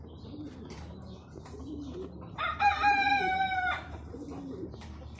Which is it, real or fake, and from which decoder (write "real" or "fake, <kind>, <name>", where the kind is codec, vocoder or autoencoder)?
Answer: fake, vocoder, BigVGAN v2